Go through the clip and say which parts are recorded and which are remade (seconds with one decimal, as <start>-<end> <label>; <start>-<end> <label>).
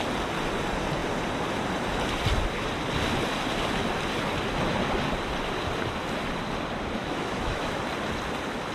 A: 0.0-7.0 recorded; 7.0-7.8 remade; 7.8-8.7 recorded